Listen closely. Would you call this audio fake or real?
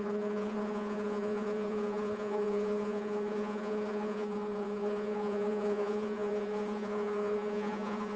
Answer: fake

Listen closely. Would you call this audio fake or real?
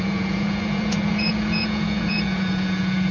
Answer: fake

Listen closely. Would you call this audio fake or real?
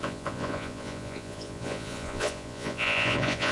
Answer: fake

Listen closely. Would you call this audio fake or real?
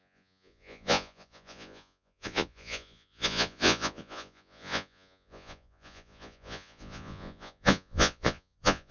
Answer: fake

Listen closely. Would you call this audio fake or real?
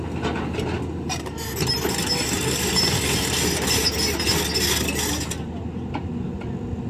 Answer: real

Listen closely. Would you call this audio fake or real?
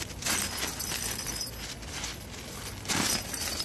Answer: real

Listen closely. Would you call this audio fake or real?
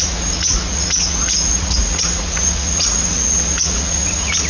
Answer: fake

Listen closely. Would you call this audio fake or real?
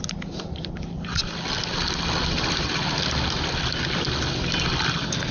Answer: real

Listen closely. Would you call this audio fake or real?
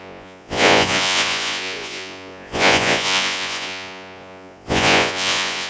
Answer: fake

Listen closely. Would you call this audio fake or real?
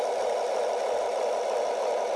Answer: real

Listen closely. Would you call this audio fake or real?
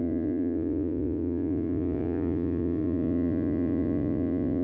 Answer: fake